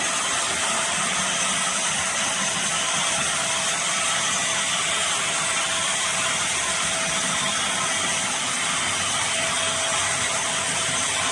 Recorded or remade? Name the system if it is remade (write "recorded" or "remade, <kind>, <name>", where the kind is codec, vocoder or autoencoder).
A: recorded